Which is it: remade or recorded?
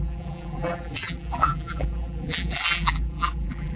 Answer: remade